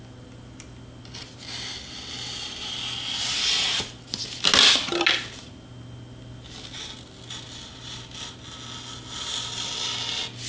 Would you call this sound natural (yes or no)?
yes